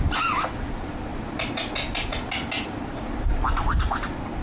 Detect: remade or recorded recorded